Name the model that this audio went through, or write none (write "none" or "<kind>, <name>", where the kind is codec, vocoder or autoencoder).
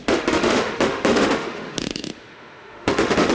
autoencoder, DAC-VAE